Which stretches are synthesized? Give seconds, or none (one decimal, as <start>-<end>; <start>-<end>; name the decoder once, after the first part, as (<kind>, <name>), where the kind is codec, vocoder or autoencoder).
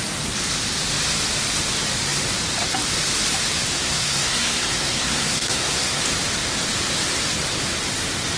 3.7-6.0 (codec, SNAC)